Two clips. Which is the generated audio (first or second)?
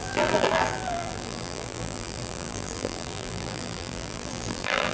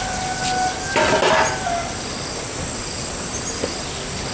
first